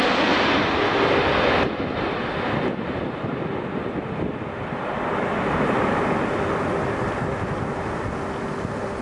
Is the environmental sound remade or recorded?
recorded